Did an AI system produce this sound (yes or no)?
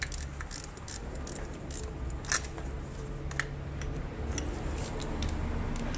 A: no